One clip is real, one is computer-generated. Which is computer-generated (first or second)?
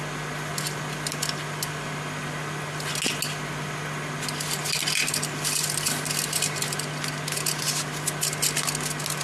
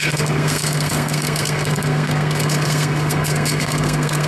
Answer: second